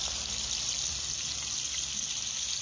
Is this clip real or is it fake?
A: real